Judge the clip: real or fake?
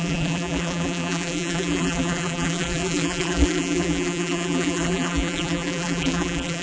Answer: fake